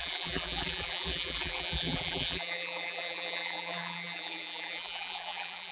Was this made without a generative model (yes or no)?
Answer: no